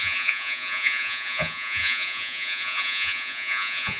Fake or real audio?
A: fake